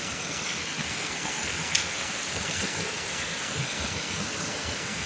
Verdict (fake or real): fake